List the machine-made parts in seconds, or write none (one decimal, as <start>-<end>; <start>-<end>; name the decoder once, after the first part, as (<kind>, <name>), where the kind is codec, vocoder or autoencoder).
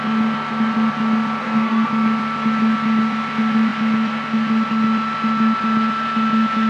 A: 1.4-1.9 (codec, SNAC)